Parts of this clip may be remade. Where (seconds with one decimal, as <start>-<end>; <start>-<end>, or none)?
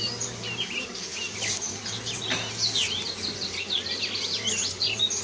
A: none